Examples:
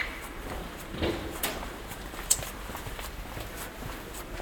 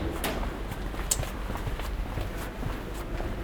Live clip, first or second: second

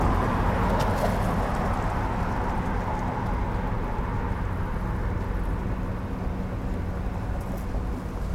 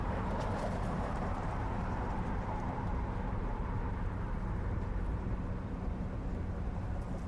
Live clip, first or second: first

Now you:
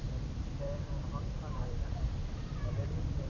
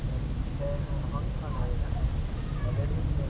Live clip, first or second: second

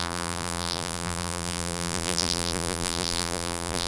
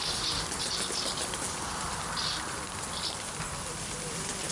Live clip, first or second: second